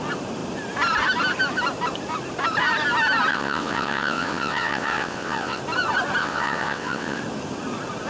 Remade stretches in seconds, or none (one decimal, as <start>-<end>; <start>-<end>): 3.3-5.6; 6.2-7.2